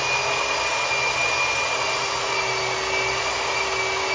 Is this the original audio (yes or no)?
yes